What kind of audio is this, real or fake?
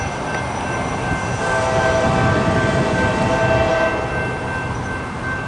real